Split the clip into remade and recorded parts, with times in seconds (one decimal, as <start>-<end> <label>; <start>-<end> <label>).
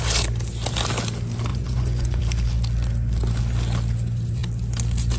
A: 0.0-1.5 recorded; 1.5-2.2 remade; 2.2-5.2 recorded